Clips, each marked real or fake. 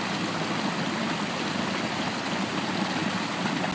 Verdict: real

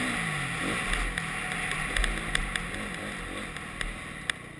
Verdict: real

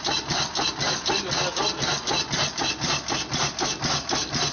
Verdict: real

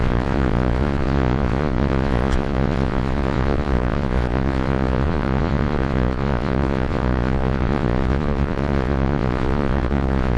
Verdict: fake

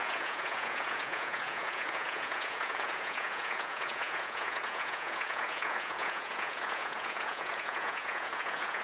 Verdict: fake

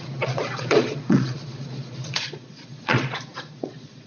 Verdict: fake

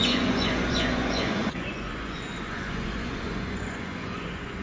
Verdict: fake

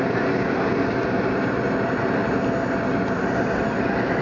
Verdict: real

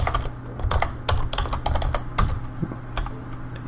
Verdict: real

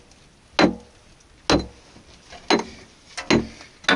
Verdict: real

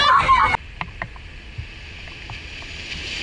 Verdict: real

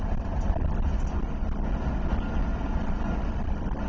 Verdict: real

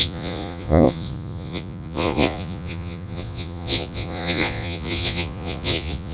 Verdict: fake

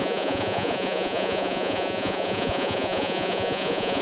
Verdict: fake